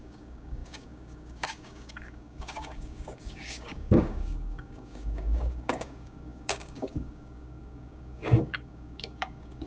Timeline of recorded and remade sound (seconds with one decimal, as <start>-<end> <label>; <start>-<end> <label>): 0.0-9.7 remade